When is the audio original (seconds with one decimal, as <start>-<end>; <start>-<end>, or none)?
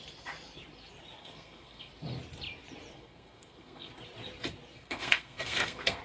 0.0-1.2; 1.9-2.9; 3.9-4.7